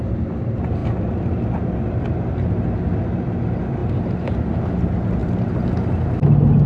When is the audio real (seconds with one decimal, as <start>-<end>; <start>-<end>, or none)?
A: 0.0-6.7